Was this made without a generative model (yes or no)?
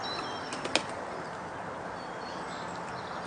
yes